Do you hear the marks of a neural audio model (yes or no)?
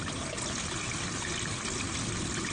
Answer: no